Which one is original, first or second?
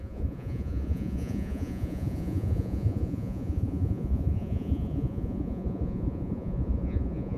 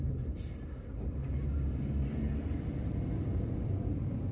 second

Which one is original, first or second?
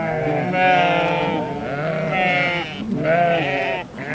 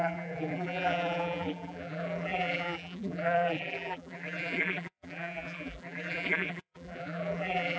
first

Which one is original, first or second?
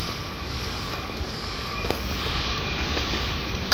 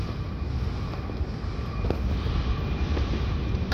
second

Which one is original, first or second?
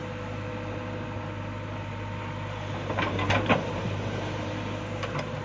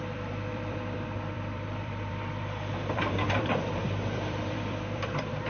first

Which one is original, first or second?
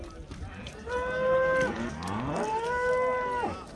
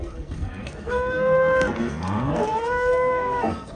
first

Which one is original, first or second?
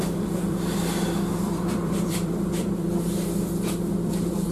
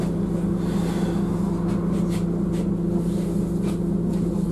second